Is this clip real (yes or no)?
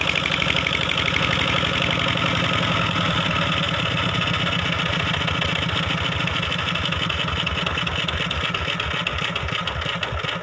yes